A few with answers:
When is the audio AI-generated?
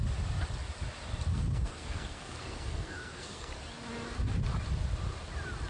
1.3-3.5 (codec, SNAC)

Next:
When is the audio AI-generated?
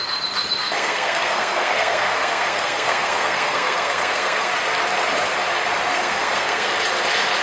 0.6-4.5 (codec, SNAC); 5.9-6.7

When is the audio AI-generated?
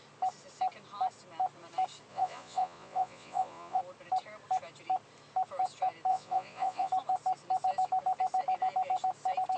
2.1-3.8 (vocoder, Vocos); 6.1-6.9